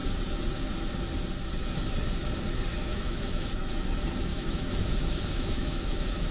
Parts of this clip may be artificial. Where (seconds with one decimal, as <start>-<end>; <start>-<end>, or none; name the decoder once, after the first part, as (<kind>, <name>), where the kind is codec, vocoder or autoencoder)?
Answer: 2.7-3.6 (autoencoder, DAC-VAE); 4.3-6.3